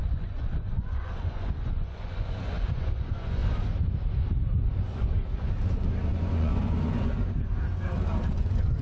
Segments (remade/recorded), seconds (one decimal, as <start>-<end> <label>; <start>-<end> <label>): 0.0-3.4 remade; 3.4-6.1 recorded; 6.1-7.1 remade; 7.1-8.3 recorded; 8.3-8.8 remade